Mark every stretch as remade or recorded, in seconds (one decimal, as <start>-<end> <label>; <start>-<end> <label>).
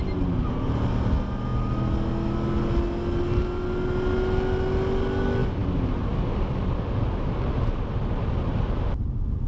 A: 0.0-9.5 recorded